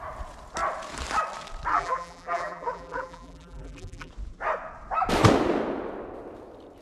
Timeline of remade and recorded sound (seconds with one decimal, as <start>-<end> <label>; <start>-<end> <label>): 0.0-1.7 recorded; 1.7-4.1 remade; 4.1-6.8 recorded